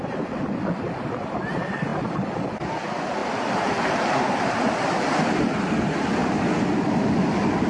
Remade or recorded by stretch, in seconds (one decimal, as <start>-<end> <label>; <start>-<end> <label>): 0.0-1.9 recorded; 1.9-2.7 remade; 2.7-3.2 recorded; 3.2-4.9 remade; 4.9-6.2 recorded; 6.2-6.9 remade; 6.9-7.7 recorded